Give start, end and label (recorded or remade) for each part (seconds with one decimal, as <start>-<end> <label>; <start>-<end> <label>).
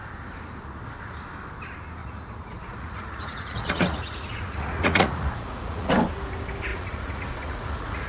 0.0-2.0 recorded; 2.0-5.9 remade; 5.9-6.7 recorded; 6.7-8.1 remade